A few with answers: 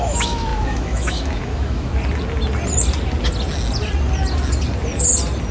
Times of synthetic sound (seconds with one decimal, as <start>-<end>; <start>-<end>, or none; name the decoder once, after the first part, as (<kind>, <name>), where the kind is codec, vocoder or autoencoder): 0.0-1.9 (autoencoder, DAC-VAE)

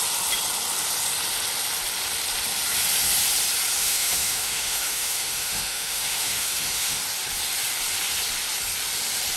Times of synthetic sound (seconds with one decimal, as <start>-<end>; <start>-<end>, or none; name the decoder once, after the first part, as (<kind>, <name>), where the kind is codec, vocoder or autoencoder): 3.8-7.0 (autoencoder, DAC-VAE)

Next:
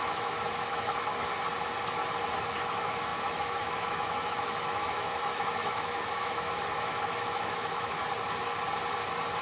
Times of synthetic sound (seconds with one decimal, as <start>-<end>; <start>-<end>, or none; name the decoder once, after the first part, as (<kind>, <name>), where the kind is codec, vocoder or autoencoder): 0.0-1.1 (autoencoder, DAC-VAE); 2.4-8.0

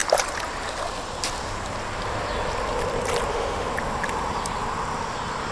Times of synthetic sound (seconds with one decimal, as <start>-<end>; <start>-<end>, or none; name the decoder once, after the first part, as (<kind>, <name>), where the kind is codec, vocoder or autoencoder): 3.3-3.7 (autoencoder, DAC-VAE)

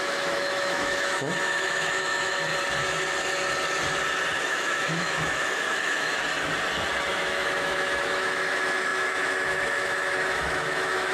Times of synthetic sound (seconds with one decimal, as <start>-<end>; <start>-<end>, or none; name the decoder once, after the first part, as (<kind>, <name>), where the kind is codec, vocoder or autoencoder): 0.0-2.5 (autoencoder, DAC-VAE); 4.4-6.2; 7.1-11.1

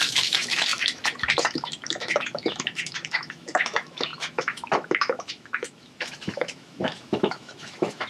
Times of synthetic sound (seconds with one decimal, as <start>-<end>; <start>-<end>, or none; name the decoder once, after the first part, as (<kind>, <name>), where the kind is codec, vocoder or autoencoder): 0.0-8.1 (autoencoder, DAC-VAE)

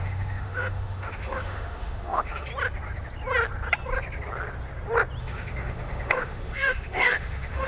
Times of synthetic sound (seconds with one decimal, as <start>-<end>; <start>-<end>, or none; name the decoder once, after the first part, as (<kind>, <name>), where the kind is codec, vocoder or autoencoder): 0.0-2.5 (autoencoder, DAC-VAE); 5.2-7.7

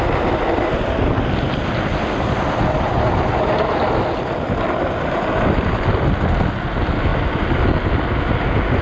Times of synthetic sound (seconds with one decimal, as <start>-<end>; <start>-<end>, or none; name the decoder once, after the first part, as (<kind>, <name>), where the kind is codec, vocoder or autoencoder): none